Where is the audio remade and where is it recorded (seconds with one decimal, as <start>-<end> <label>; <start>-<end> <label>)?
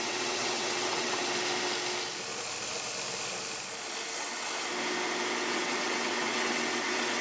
0.0-1.2 remade; 1.2-5.5 recorded; 5.5-7.2 remade